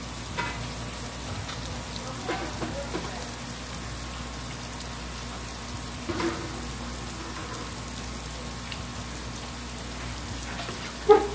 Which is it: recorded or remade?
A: recorded